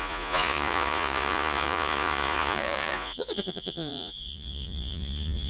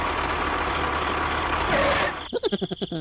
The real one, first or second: second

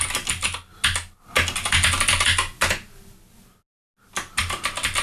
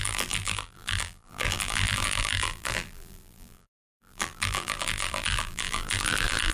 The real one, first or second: first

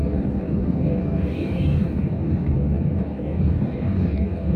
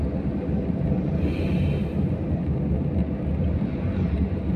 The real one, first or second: second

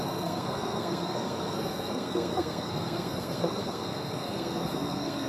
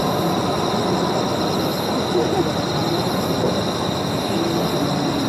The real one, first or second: second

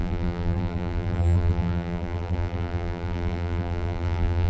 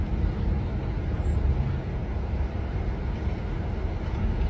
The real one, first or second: second